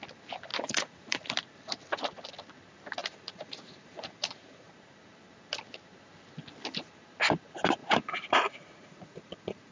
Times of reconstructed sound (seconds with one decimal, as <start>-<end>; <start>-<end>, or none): 0.5-1.3; 3.0-4.7; 7.8-9.7